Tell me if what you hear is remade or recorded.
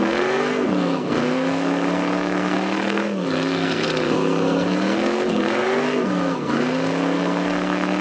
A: remade